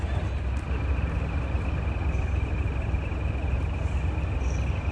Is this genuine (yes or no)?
yes